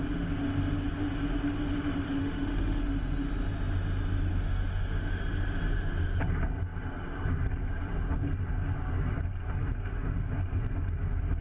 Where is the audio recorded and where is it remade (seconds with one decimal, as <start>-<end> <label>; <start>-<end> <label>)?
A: 0.0-2.2 recorded; 2.2-2.8 remade; 2.8-4.3 recorded; 4.3-5.2 remade; 5.2-11.4 recorded

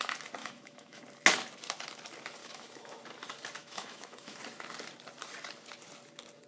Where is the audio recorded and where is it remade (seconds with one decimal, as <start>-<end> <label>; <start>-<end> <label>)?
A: 0.0-0.4 recorded; 0.4-1.0 remade; 1.0-2.4 recorded; 2.4-3.0 remade; 3.0-3.6 recorded; 3.6-4.4 remade; 4.4-6.5 recorded

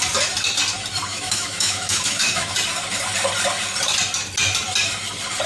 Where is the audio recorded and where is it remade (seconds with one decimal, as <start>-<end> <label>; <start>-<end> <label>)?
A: 0.0-1.1 recorded; 1.1-2.5 remade; 2.5-5.5 recorded

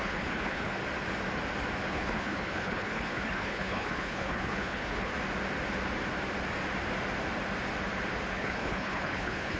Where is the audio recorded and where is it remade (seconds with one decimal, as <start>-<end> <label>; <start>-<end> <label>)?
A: 0.0-0.8 remade; 0.8-1.9 recorded; 1.9-5.1 remade; 5.1-8.3 recorded; 8.3-9.6 remade

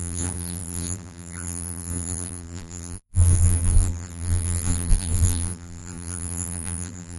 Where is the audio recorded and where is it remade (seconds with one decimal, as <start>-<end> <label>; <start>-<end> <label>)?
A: 0.0-7.2 remade

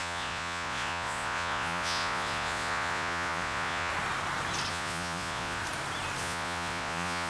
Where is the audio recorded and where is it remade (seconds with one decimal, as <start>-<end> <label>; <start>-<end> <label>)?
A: 0.0-3.9 remade; 3.9-4.7 recorded; 4.7-5.6 remade; 5.6-6.2 recorded; 6.2-7.3 remade

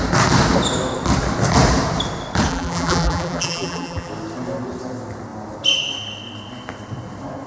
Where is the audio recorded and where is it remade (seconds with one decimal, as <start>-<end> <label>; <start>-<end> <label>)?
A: 0.0-2.5 recorded; 2.5-4.1 remade; 4.1-7.5 recorded